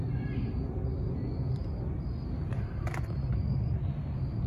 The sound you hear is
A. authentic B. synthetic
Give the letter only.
A